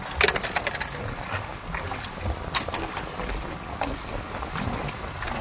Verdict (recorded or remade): recorded